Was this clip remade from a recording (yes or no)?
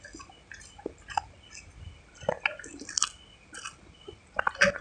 no